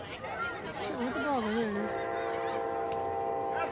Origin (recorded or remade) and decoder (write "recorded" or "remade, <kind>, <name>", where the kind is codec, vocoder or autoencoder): recorded